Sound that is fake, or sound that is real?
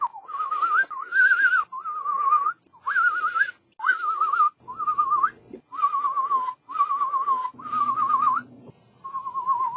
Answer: real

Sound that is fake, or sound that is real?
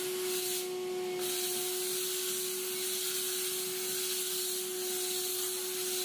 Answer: real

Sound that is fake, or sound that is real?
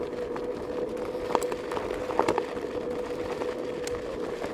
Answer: real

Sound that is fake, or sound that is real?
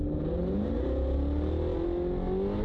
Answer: real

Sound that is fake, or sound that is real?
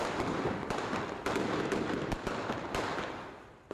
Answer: real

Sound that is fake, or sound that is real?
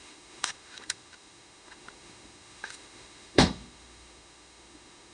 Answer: fake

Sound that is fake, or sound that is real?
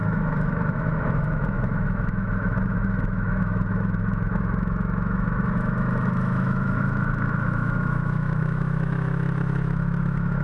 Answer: fake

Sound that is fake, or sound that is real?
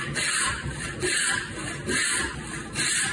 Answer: real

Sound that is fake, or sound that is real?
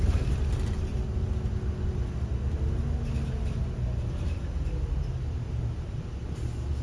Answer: real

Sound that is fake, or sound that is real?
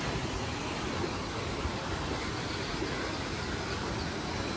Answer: real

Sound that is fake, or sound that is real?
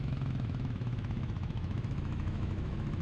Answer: fake